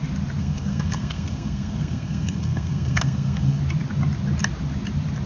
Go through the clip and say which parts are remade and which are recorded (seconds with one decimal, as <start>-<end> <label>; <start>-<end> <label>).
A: 0.0-0.4 recorded; 0.4-3.6 remade; 3.6-5.3 recorded